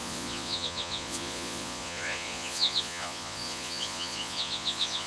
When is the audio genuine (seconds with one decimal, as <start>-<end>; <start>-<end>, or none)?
none